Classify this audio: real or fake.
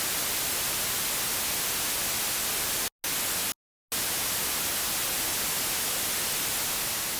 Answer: real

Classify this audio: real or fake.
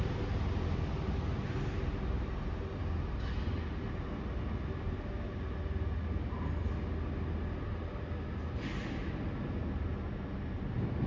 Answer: real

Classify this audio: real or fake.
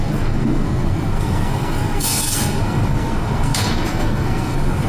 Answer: fake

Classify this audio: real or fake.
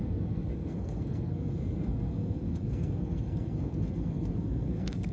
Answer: fake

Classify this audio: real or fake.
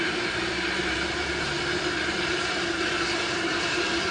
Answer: fake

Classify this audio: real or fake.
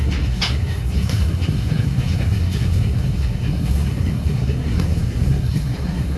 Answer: fake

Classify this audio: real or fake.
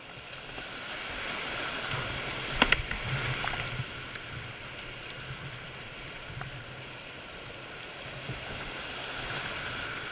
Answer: real